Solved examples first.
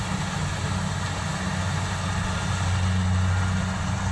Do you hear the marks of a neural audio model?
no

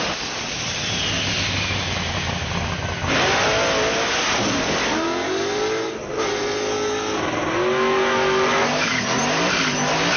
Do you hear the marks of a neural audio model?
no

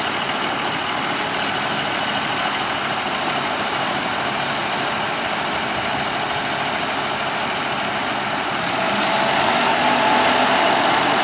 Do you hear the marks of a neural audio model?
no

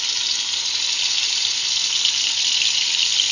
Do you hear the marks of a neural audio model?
no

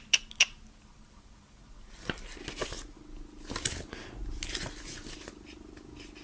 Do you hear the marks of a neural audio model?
no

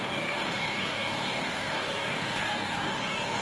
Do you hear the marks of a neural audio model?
yes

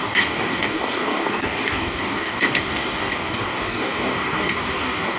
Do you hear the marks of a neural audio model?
yes